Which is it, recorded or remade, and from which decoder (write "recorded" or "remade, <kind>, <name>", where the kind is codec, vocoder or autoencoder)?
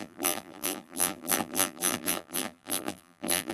remade, vocoder, BigVGAN v2